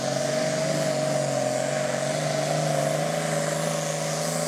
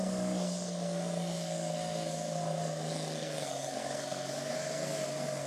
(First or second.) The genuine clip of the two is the first